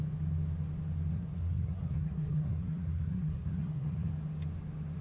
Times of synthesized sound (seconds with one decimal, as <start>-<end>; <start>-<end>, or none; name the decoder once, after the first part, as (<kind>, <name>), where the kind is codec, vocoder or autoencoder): 1.1-4.1 (codec, SNAC)